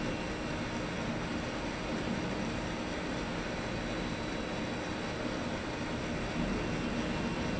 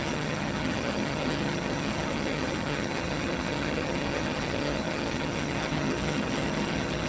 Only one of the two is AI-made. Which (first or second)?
second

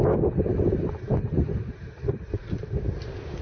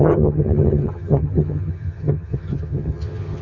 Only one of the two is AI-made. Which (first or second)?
second